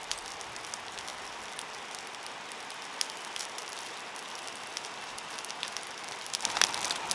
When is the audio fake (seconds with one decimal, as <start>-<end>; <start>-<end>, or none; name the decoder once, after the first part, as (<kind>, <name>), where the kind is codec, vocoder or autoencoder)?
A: none

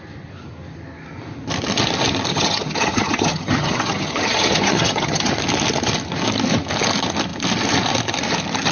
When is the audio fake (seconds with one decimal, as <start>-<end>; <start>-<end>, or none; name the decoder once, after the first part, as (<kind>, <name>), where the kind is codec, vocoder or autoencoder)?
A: 2.3-5.3 (vocoder, HiFi-GAN)

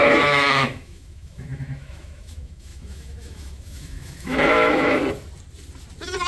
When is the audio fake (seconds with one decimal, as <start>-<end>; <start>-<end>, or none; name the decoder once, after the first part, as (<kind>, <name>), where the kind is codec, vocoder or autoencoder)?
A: 0.0-5.0 (autoencoder, DAC-VAE)

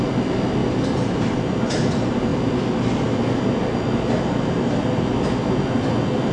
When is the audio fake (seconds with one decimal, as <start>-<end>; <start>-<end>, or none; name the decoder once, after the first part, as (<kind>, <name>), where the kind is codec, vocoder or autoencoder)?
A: 0.6-1.3 (vocoder, BigVGAN v2)

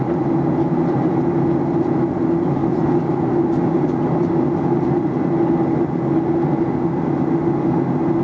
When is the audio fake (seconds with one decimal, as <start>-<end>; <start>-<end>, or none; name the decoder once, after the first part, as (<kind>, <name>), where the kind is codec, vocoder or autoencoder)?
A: none

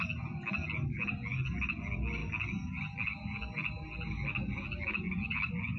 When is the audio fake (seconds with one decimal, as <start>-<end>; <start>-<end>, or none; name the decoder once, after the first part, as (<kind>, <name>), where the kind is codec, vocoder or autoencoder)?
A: none

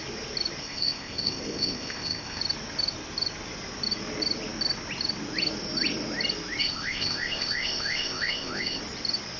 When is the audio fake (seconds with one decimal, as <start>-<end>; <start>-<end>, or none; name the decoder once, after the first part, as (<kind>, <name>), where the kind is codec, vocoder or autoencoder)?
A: 0.6-2.4 (codec, ZipCodec); 6.6-8.8